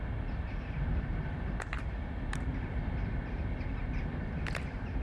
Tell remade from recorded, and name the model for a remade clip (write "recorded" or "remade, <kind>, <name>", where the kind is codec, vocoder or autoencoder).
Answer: recorded